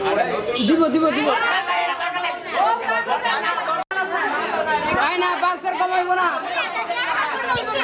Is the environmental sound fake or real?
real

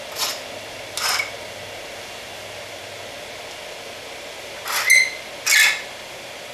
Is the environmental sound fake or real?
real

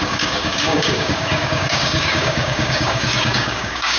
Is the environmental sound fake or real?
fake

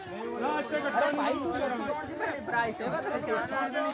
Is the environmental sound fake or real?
real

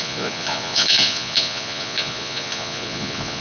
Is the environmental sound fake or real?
fake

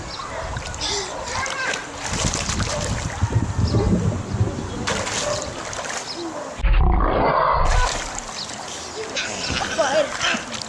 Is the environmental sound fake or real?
real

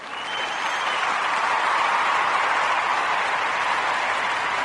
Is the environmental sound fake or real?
real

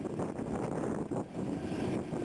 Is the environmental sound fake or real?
real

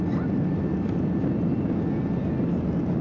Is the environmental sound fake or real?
real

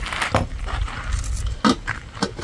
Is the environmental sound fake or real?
real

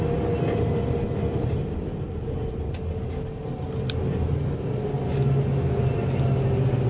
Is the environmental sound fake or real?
real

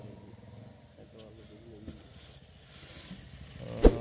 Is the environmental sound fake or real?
real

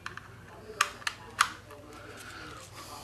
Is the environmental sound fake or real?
real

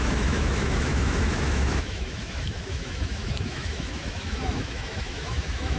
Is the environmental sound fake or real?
fake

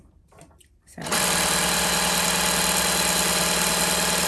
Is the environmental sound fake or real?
real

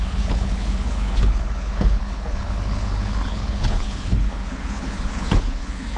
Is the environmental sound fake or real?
fake